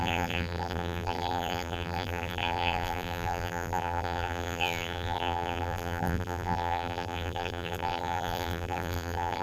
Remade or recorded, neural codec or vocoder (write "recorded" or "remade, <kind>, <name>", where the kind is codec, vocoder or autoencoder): remade, vocoder, BigVGAN v2